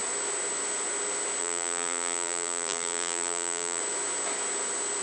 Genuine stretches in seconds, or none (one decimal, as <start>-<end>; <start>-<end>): 0.0-1.4; 3.8-5.0